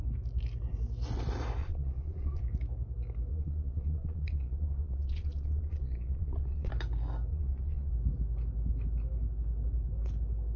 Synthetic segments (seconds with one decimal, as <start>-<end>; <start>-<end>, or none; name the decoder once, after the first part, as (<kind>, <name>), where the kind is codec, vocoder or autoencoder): 1.6-2.4 (vocoder, Vocos); 3.3-6.7; 7.3-7.9